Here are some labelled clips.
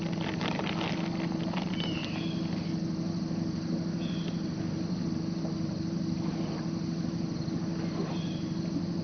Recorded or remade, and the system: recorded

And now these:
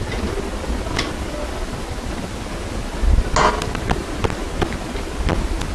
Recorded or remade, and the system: recorded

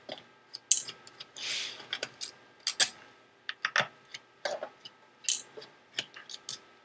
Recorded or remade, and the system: recorded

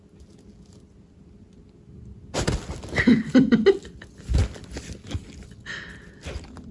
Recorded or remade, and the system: recorded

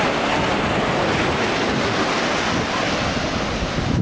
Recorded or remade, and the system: recorded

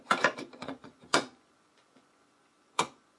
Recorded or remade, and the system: remade, vocoder, Vocos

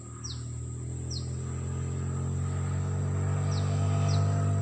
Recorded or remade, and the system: recorded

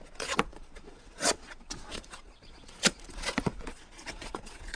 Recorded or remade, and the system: remade, vocoder, Vocos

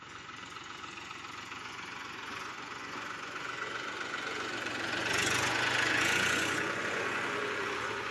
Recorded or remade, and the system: remade, vocoder, Vocos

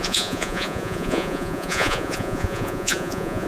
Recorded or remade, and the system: remade, vocoder, Vocos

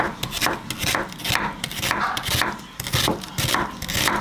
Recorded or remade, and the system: recorded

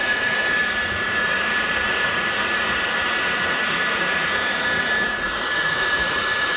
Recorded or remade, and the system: remade, vocoder, Vocos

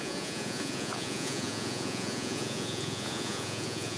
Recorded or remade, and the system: remade, vocoder, Vocos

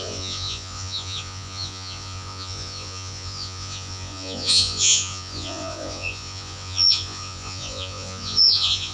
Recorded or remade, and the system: remade, vocoder, Vocos